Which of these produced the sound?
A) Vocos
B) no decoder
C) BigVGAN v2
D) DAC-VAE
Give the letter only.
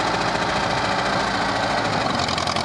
B